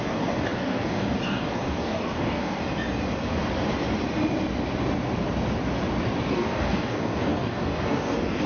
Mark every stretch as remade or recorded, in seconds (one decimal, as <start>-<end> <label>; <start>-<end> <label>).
0.0-2.6 remade; 2.6-6.3 recorded; 6.3-8.5 remade